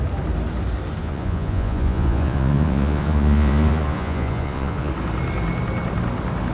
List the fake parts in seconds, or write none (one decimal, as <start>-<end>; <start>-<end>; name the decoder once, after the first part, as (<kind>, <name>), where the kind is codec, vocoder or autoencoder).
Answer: 1.0-4.9 (vocoder, Vocos)